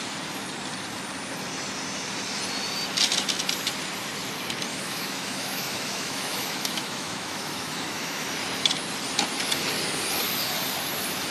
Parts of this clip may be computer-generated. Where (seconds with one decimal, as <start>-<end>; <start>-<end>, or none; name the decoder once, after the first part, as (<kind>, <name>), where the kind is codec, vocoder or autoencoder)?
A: 4.7-8.3 (autoencoder, DAC-VAE)